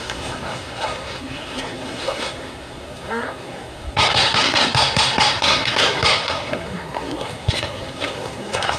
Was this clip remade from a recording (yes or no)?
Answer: yes